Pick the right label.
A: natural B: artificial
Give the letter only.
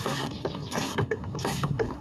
B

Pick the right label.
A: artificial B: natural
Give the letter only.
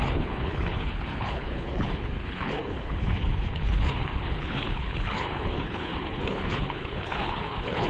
A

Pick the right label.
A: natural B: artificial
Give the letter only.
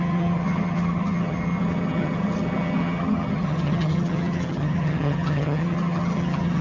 B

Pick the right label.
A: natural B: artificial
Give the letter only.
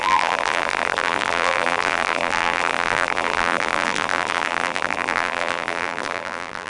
B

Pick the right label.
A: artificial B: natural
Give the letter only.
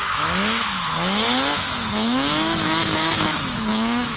A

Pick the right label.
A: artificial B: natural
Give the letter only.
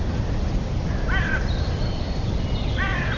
B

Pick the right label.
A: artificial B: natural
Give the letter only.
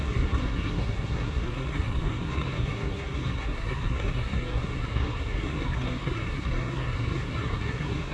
A